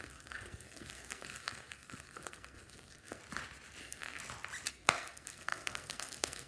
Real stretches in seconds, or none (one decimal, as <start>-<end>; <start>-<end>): 3.2-3.8; 4.2-4.7